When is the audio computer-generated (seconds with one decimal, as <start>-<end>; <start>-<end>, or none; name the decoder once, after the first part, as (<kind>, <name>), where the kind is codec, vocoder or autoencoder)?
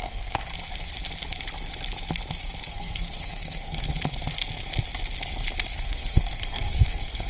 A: 0.0-0.5 (codec, SNAC); 2.7-3.9; 5.7-7.3